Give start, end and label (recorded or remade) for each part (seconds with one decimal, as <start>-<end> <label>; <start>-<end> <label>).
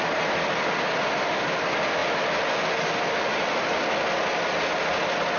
0.0-5.4 recorded